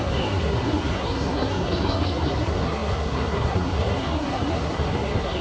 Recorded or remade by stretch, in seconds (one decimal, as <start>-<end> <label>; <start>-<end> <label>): 0.0-5.4 remade